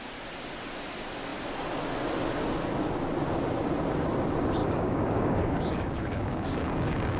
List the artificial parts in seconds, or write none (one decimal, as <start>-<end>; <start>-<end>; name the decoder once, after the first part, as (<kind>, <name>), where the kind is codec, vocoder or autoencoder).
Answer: 4.6-7.2 (codec, DAC)